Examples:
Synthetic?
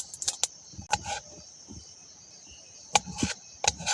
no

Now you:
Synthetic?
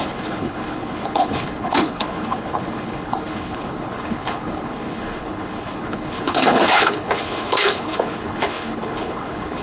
yes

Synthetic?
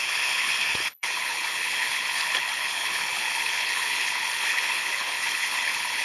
yes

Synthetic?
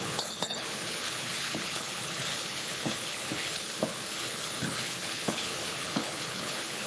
yes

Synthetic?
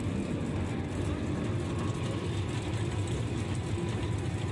no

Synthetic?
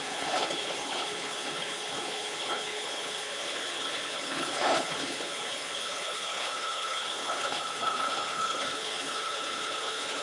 yes